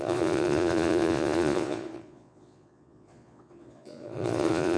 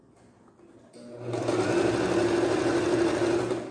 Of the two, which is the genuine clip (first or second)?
second